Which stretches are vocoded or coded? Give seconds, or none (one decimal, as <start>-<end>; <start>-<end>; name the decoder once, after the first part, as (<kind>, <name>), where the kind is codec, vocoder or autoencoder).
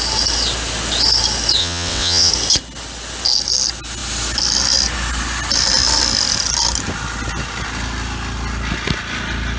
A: 1.6-2.3 (vocoder, WaveNeXt)